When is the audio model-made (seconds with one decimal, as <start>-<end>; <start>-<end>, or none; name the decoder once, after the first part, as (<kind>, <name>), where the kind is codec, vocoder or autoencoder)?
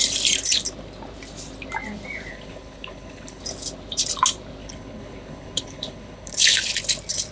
2.3-3.4 (codec, HILCodec); 4.6-6.8